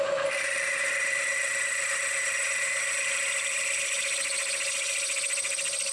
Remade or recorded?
recorded